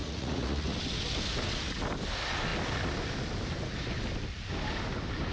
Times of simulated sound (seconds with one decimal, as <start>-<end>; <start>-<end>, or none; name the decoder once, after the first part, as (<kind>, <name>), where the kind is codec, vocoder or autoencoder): 0.0-0.8 (vocoder, Vocos)